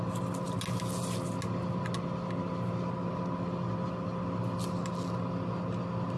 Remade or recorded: recorded